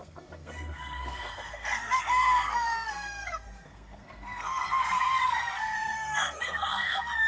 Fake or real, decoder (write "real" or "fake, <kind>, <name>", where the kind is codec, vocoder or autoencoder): fake, codec, SNAC